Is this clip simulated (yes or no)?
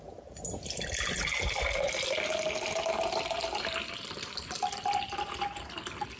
no